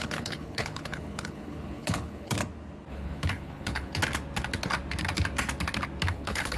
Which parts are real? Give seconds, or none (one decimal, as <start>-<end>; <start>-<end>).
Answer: 2.4-2.9; 4.0-6.1